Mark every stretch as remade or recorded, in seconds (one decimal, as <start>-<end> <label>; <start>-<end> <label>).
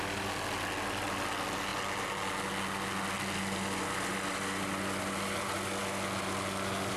0.0-7.0 recorded